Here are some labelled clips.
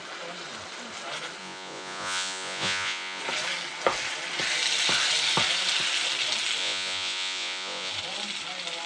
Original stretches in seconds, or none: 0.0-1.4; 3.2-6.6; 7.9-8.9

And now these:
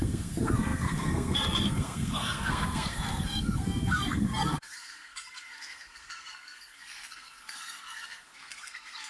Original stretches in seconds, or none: none

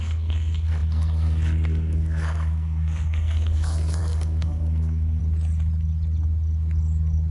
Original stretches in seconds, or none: 5.2-7.3

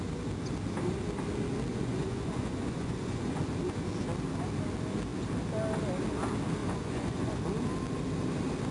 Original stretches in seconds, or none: 0.0-1.7; 3.4-6.6; 7.4-8.7

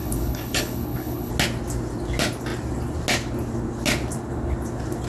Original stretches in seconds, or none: 1.3-5.1

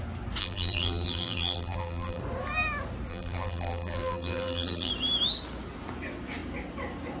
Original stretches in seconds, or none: 0.0-0.4; 2.2-3.1; 4.9-7.2

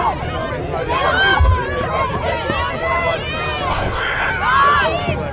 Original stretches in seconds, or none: 0.0-3.7; 4.3-5.3

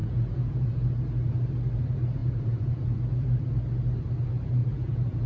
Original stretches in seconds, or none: 0.9-2.2; 3.2-4.6